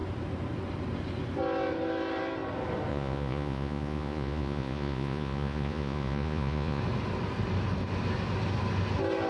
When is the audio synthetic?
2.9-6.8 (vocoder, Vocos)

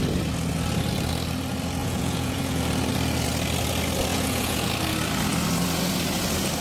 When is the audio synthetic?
1.8-2.6 (vocoder, Vocos); 4.1-4.7

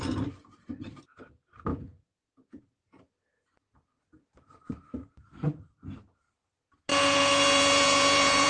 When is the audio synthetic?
1.7-2.6 (vocoder, Vocos); 6.9-8.5